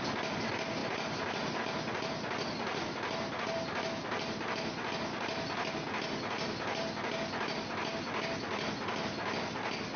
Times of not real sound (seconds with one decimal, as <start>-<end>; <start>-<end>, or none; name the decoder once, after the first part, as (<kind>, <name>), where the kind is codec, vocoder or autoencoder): 0.8-1.6 (vocoder, BigVGAN v2)